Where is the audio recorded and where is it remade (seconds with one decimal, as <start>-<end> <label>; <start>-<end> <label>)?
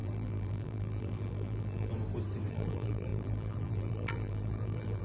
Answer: 0.0-1.9 remade; 1.9-2.5 recorded; 2.5-5.0 remade